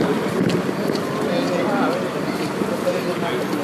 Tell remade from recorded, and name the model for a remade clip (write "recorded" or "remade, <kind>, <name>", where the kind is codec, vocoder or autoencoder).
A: recorded